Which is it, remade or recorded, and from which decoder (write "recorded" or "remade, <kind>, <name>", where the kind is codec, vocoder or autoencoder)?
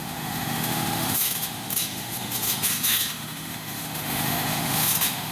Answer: remade, autoencoder, DAC-VAE